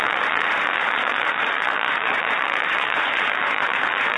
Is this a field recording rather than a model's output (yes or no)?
no